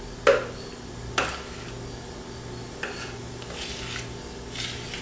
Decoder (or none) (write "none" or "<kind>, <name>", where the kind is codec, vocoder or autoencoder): none